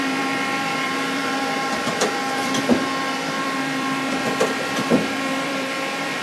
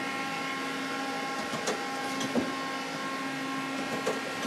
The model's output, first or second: first